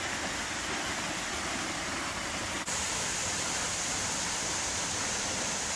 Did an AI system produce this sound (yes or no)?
no